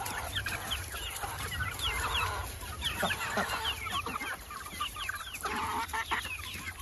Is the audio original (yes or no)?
no